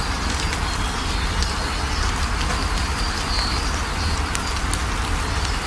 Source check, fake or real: real